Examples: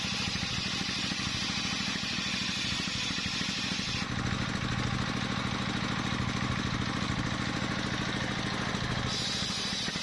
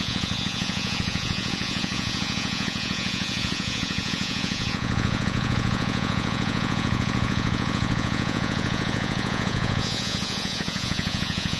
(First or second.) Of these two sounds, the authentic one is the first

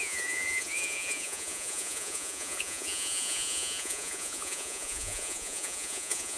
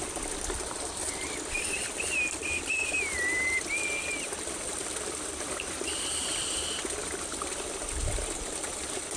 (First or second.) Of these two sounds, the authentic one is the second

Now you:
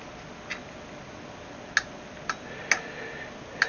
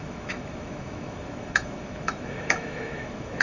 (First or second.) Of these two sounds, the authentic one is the first